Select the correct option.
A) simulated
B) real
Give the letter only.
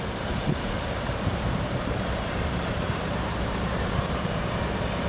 A